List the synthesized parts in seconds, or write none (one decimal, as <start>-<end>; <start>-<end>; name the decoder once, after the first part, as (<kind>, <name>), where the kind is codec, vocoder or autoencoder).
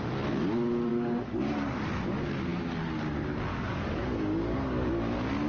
0.9-2.0 (codec, DAC); 3.5-4.9